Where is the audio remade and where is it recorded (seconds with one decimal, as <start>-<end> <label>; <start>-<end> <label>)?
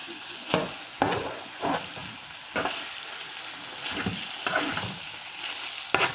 0.0-1.6 remade; 1.6-6.1 recorded